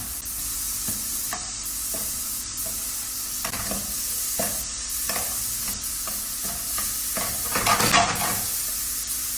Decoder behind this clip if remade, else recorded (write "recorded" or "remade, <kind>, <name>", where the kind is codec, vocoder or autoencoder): recorded